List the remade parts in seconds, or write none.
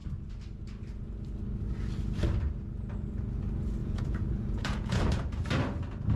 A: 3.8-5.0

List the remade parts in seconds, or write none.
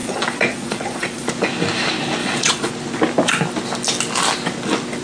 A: 0.0-1.3; 2.2-2.7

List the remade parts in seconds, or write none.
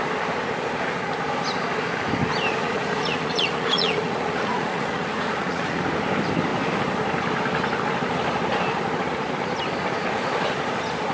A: 2.6-5.8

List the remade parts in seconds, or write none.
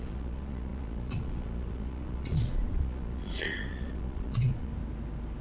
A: 0.0-4.7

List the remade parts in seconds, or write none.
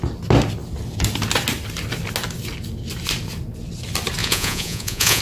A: 4.2-5.2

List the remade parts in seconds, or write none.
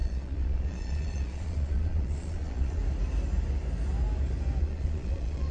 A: 0.0-2.8; 4.6-5.5